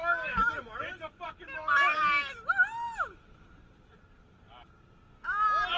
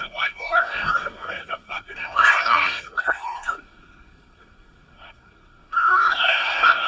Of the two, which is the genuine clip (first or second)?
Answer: first